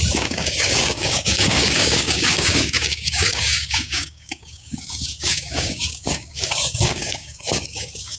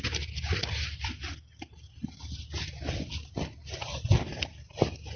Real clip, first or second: second